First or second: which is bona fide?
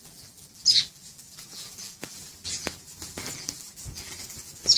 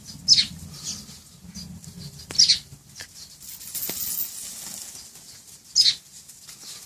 second